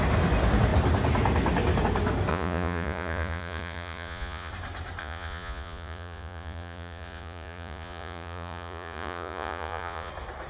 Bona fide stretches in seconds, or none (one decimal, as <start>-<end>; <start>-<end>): 0.0-2.3; 4.5-5.0; 10.1-10.5